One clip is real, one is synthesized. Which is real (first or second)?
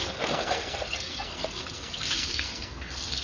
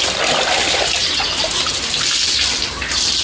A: second